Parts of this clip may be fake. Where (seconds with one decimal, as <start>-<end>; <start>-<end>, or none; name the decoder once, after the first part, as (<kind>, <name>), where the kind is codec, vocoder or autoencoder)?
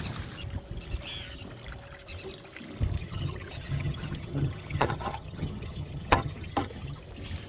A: 3.0-7.0 (vocoder, HiFi-GAN)